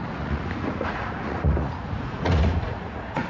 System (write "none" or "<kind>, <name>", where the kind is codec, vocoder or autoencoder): vocoder, Vocos